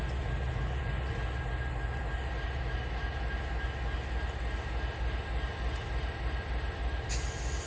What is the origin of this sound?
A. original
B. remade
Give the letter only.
A